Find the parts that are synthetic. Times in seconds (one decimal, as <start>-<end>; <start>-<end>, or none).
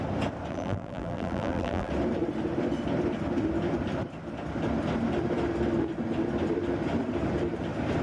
0.5-1.9